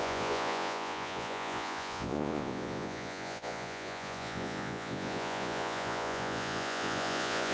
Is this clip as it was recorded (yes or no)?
no